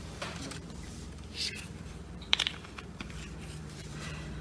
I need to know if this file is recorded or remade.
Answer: remade